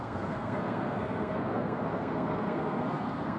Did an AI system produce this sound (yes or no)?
yes